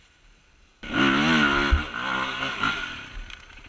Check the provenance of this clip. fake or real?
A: real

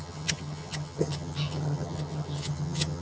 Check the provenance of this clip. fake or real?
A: fake